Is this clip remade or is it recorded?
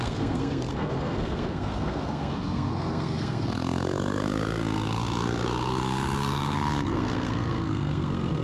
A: remade